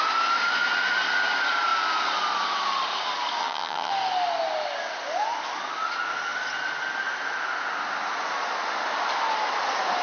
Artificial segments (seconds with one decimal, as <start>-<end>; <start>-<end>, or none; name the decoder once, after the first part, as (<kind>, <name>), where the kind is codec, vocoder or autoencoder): 3.4-3.9 (vocoder, HiFi-GAN)